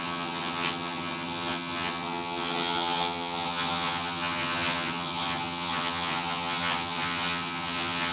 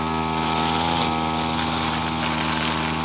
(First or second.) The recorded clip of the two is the second